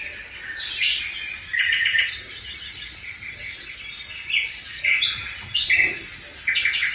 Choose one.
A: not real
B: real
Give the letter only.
B